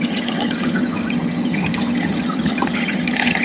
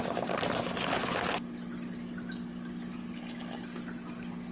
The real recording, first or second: second